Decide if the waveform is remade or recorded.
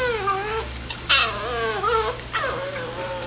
recorded